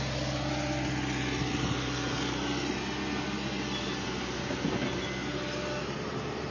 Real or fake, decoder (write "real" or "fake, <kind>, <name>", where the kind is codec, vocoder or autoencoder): real